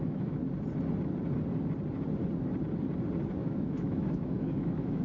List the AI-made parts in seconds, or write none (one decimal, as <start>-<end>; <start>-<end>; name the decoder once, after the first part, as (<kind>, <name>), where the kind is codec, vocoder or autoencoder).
0.0-0.4 (autoencoder, DAC-VAE); 3.4-5.0